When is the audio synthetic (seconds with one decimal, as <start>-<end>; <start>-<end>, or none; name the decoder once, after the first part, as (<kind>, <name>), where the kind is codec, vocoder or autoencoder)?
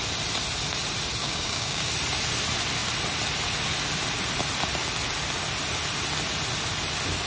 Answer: 1.2-1.9 (codec, DAC)